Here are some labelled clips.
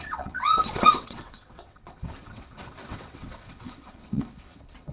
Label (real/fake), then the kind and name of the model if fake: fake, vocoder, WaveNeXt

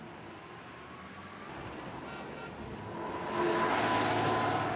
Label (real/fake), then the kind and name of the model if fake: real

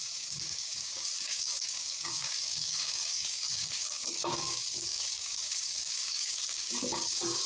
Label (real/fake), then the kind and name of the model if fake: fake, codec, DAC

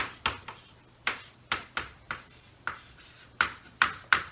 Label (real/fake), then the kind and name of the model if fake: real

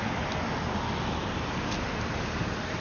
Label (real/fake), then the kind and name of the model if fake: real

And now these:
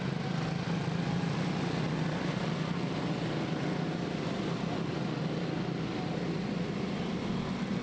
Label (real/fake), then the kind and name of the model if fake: real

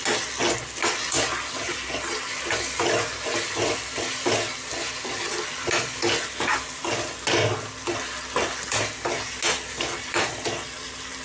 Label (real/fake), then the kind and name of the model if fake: real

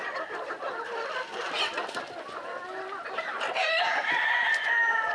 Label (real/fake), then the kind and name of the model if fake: real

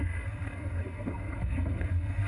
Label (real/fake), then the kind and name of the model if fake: fake, codec, SNAC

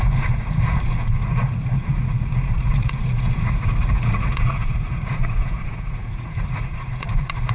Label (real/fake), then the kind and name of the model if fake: fake, vocoder, Vocos